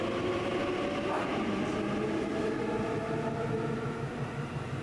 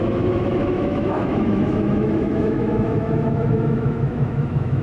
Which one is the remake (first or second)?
second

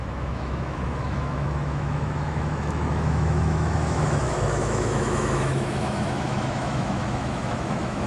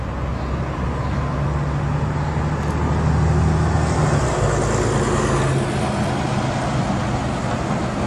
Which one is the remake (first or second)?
first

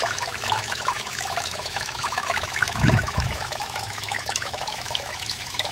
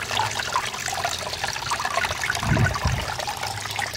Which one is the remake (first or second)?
first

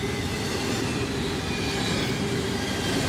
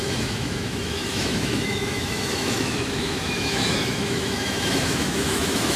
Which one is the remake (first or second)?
second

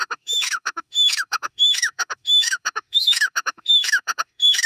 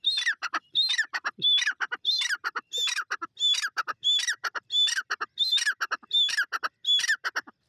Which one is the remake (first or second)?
first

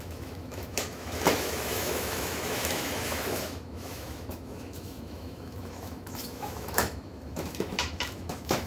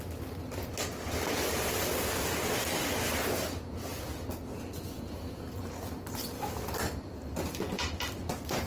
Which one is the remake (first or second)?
first